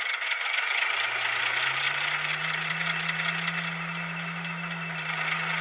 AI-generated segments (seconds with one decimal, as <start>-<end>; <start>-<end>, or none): none